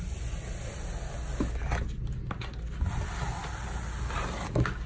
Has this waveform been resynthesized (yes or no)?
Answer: no